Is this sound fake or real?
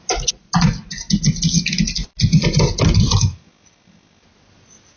real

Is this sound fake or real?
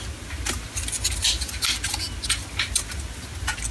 real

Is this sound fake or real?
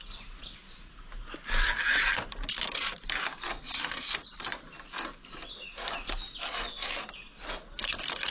real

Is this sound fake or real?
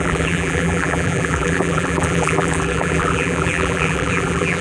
fake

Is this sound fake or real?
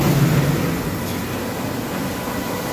real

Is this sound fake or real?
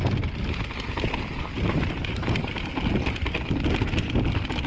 real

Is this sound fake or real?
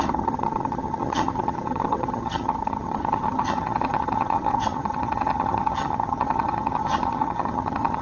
fake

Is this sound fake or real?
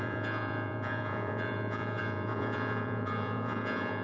fake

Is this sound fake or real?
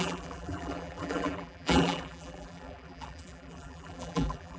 fake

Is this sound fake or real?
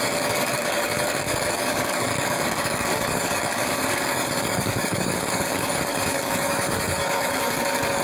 fake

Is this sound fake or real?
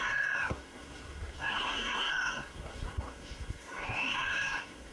fake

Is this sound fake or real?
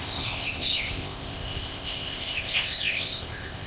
fake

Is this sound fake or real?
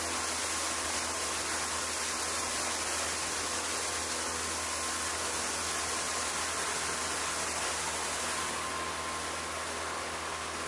real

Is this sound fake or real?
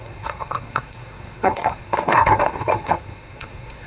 fake